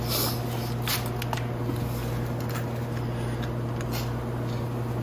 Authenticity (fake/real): real